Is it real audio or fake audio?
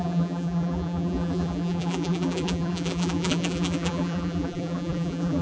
fake